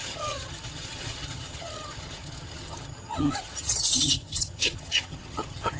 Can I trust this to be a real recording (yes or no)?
no